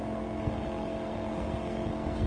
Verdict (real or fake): fake